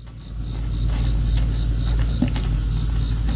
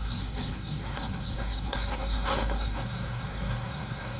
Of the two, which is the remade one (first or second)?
second